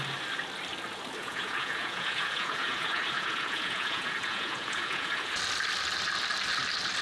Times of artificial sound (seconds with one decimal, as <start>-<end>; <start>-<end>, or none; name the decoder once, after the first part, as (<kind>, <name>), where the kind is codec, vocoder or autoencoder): 1.2-5.4 (vocoder, Vocos)